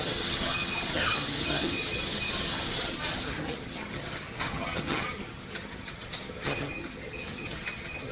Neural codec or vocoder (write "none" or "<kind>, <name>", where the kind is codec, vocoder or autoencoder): vocoder, HiFi-GAN